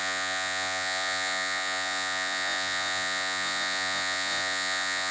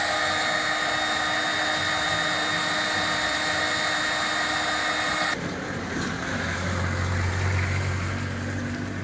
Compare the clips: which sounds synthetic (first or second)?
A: first